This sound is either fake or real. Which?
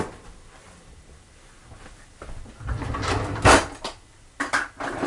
real